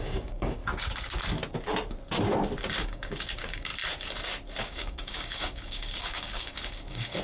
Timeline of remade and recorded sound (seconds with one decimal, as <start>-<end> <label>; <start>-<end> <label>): 0.0-0.6 remade; 0.6-2.7 recorded; 2.7-3.7 remade; 3.7-4.6 recorded; 4.6-7.2 remade